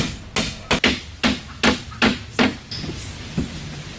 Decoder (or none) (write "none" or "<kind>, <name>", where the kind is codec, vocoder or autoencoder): none